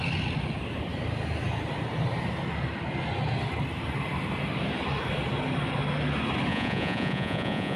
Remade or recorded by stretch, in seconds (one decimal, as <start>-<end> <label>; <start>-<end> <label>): 0.0-6.5 recorded; 6.5-7.8 remade